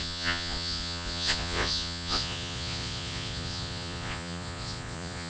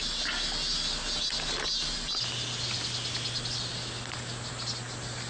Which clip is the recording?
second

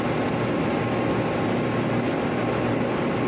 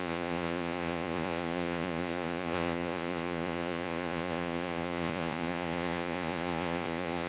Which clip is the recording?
first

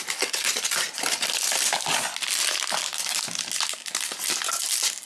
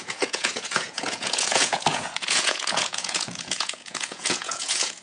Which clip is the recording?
first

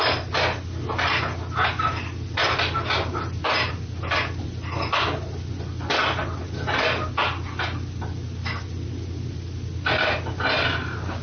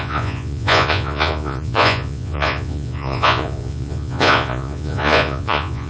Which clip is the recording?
first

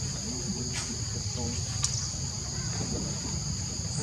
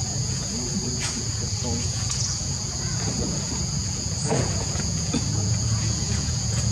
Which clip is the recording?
first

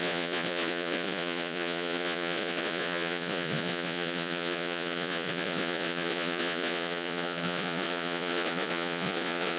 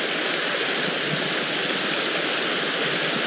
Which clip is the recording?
second